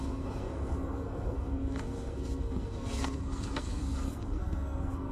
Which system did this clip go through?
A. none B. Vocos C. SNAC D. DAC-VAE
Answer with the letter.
C